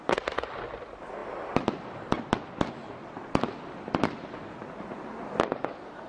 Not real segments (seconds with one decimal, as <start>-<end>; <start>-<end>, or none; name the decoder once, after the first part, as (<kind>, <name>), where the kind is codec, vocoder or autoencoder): none